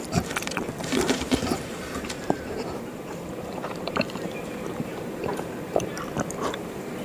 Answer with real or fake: fake